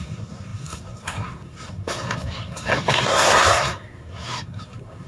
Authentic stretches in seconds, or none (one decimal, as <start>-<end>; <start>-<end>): none